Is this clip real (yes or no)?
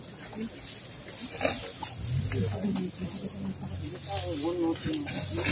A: yes